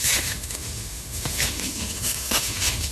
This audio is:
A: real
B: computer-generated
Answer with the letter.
B